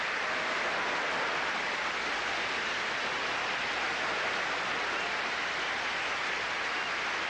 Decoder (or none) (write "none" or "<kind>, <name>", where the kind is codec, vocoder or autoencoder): none